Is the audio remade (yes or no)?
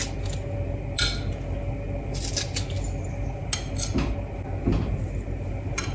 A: no